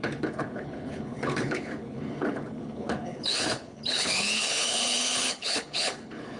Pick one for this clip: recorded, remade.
remade